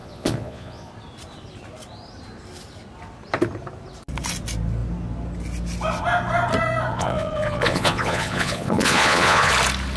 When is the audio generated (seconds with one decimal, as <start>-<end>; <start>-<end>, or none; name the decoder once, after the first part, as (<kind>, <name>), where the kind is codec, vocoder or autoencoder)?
0.0-0.9 (vocoder, Vocos); 6.9-9.5